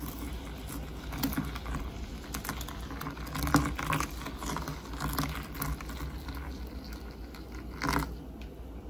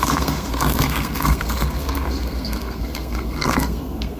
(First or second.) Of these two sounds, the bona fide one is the first